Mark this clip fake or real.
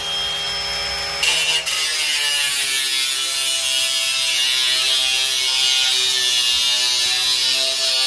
real